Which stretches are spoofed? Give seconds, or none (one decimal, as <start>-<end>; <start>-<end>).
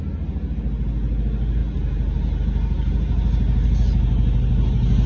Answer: none